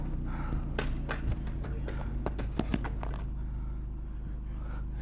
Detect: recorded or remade recorded